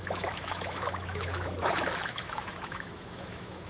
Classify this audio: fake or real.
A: fake